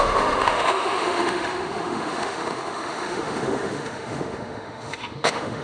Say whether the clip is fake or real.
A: fake